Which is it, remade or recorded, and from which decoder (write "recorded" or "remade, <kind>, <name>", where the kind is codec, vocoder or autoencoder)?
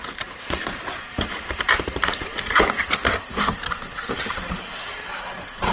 remade, vocoder, BigVGAN v2